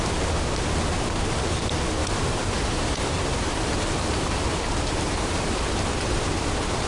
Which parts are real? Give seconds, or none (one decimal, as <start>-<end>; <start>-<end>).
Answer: 0.0-2.0; 5.6-6.9